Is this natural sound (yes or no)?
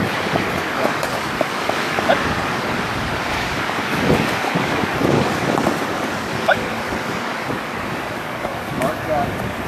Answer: no